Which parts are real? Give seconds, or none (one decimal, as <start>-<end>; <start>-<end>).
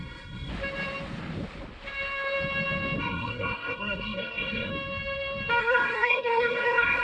0.5-3.0; 4.7-5.6